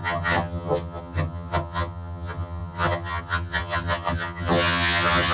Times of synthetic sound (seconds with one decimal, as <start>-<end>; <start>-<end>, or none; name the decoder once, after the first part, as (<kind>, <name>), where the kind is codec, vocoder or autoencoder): 0.0-5.3 (vocoder, HiFi-GAN)